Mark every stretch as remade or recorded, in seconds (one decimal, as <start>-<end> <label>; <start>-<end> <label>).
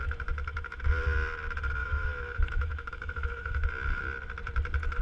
0.0-0.8 remade; 0.8-1.8 recorded; 1.8-4.0 remade; 4.0-5.0 recorded